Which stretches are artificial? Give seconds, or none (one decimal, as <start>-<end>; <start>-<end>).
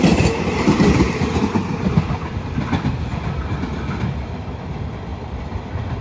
5.1-5.6